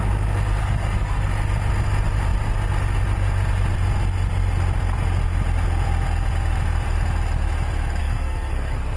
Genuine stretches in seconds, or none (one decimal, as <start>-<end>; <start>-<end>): 0.0-0.6; 1.3-8.0